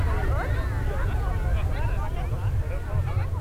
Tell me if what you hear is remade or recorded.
recorded